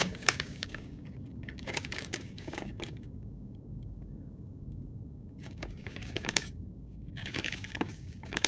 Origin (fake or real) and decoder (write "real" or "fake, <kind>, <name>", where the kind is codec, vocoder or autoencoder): fake, codec, DAC